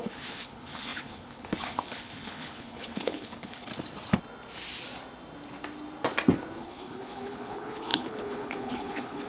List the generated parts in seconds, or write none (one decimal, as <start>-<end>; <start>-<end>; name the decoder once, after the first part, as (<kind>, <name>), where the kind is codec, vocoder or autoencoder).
0.0-3.7 (codec, HILCodec); 6.6-9.3

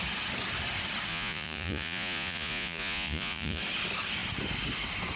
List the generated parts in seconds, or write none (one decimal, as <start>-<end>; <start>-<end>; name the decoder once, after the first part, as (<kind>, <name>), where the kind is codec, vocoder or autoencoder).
1.1-3.6 (vocoder, Vocos)

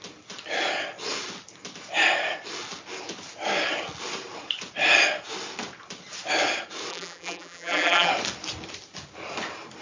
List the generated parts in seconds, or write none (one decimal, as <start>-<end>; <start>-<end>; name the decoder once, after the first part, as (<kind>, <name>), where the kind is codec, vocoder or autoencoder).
6.9-8.1 (vocoder, BigVGAN v2)

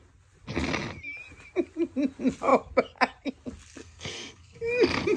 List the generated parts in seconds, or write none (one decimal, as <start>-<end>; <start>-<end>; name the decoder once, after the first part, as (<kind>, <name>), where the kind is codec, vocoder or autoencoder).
3.8-4.7 (codec, SNAC)

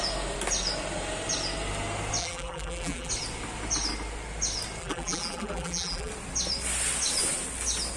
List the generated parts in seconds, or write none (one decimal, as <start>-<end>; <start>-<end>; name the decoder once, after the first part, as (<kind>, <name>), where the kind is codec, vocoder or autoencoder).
2.2-3.1 (vocoder, BigVGAN v2); 4.8-6.1

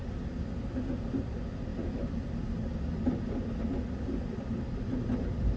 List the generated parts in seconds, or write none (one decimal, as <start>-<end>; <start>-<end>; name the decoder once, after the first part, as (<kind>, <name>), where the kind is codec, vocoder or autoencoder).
none